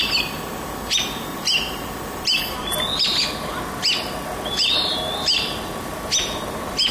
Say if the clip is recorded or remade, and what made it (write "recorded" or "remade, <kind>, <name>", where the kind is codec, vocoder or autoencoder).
recorded